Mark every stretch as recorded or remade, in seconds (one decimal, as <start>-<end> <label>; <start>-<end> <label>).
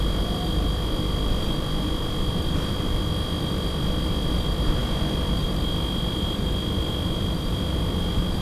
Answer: 0.0-8.4 remade